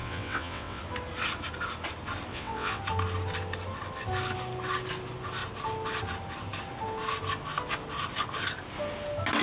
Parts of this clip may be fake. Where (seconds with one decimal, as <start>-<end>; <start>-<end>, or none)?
0.0-0.8; 2.3-2.8